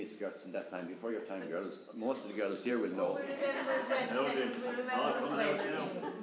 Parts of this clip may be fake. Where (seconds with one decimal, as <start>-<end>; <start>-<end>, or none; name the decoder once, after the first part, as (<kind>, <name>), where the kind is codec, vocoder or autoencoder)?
0.4-1.1 (autoencoder, DAC-VAE); 1.9-2.7